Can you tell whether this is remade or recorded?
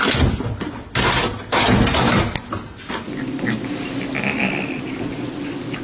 recorded